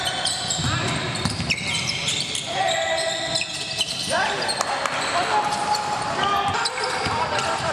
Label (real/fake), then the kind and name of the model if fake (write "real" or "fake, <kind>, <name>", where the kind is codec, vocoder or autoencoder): real